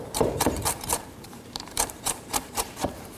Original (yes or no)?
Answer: no